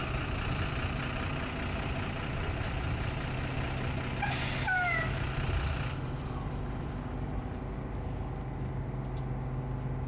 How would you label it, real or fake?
real